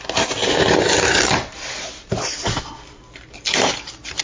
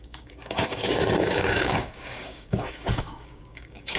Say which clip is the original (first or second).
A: first